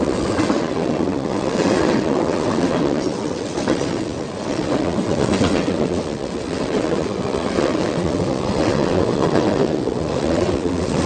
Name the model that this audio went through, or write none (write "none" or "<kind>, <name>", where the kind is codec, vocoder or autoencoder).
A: vocoder, WaveNeXt